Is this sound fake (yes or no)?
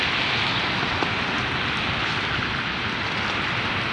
no